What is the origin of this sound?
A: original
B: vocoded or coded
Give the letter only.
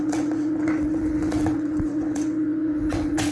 B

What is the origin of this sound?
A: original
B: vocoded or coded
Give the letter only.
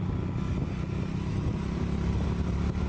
A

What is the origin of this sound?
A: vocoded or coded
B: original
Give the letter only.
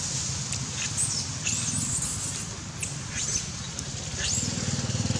B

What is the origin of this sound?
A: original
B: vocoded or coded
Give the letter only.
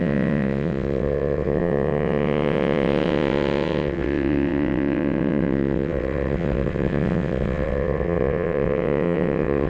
B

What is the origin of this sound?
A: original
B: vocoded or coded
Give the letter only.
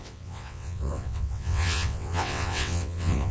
B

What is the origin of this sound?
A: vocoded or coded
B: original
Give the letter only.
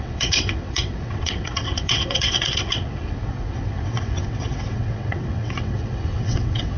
A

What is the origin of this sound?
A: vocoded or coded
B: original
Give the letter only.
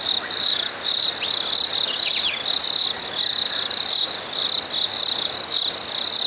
B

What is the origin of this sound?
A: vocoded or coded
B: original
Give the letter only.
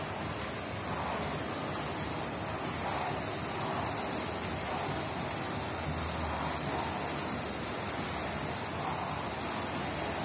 B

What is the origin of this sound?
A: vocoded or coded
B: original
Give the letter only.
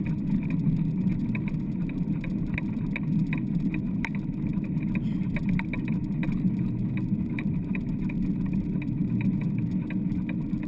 B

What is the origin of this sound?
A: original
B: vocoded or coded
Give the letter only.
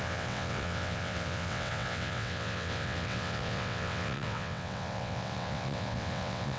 B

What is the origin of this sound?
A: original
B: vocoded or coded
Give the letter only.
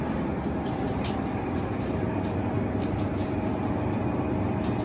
A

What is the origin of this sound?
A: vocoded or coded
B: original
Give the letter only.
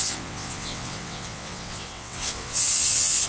A